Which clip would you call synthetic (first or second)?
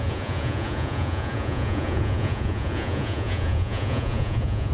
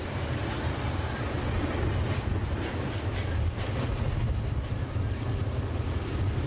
first